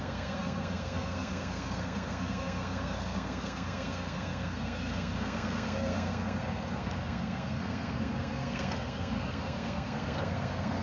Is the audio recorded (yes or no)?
no